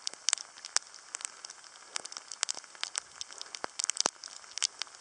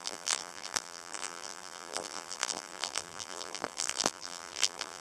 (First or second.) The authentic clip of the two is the first